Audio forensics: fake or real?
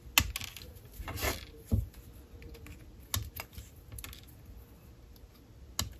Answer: real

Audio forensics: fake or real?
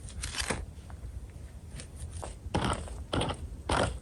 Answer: real